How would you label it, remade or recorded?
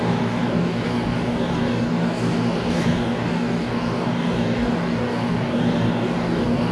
remade